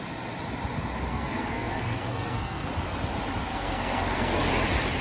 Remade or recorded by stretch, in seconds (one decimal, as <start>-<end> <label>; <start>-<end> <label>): 0.0-1.1 recorded; 1.1-2.7 remade; 2.7-3.5 recorded; 3.5-4.4 remade; 4.4-5.0 recorded